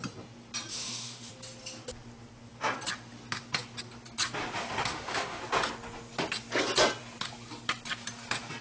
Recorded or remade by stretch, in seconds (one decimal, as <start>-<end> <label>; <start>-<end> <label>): 0.0-0.7 recorded; 0.7-1.3 remade; 1.3-4.9 recorded; 4.9-5.4 remade; 5.4-8.6 recorded